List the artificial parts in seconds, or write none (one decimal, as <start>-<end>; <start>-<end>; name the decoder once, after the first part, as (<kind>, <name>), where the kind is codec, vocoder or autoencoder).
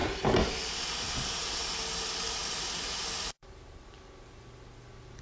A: none